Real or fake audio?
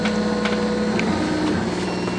real